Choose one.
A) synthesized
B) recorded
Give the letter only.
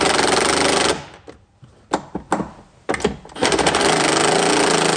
B